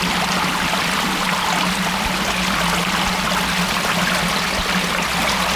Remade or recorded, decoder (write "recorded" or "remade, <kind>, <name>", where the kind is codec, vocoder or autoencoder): recorded